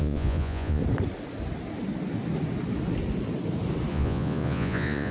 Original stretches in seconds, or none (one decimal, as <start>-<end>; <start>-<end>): 0.8-3.9